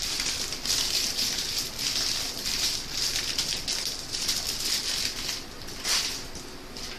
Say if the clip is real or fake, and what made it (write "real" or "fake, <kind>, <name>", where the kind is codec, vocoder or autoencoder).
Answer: real